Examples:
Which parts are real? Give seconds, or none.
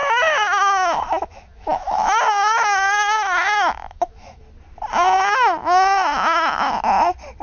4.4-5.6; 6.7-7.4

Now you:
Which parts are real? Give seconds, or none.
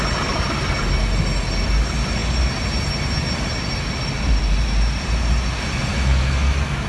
0.0-5.9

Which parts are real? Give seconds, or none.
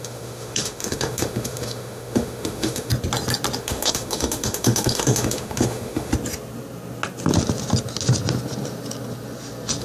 2.9-3.6; 6.1-9.8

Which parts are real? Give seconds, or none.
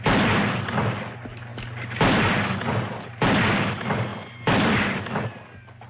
0.0-5.9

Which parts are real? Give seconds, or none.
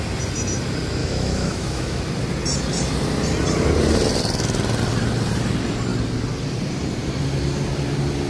0.0-1.0; 2.0-8.3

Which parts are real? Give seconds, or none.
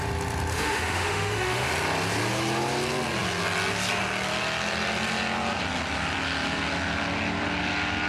0.0-0.5; 1.7-8.1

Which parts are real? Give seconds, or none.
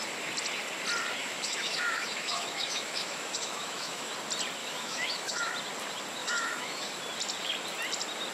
0.0-1.2; 4.1-4.6; 5.5-6.2; 7.0-8.3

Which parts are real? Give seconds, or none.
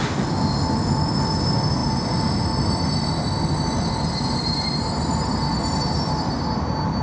0.0-7.0